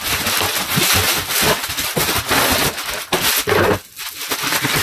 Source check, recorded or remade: recorded